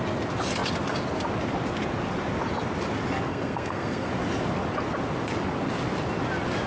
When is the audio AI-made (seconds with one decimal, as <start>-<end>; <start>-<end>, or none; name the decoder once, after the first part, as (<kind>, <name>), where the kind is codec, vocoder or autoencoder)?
3.3-4.1 (codec, SNAC)